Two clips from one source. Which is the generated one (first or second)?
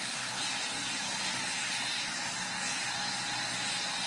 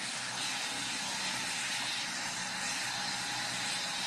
second